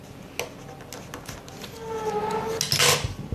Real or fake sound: real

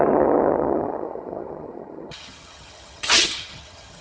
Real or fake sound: fake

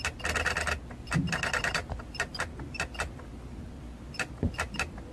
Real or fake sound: real